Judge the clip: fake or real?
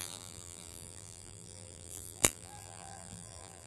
fake